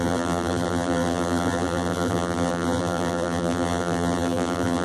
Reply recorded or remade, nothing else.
remade